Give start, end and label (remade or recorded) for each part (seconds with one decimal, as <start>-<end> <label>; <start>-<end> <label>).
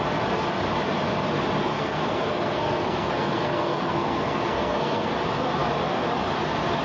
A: 0.0-1.6 recorded; 1.6-5.1 remade; 5.1-6.8 recorded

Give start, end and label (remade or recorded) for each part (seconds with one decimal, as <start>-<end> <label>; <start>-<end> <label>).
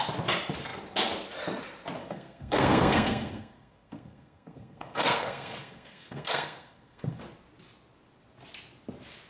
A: 0.0-2.0 recorded; 2.0-7.2 remade; 7.2-9.3 recorded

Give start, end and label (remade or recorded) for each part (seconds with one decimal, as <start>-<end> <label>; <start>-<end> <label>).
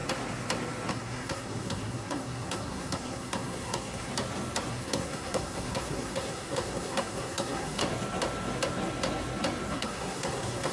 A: 0.0-0.9 recorded; 0.9-4.1 remade; 4.1-4.7 recorded; 4.7-7.8 remade; 7.8-9.7 recorded; 9.7-10.7 remade